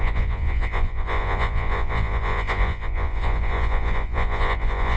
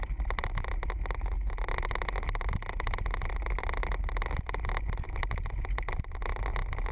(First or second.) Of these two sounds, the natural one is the second